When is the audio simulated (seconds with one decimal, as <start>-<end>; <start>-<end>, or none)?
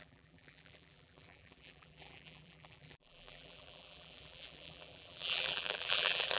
0.0-6.4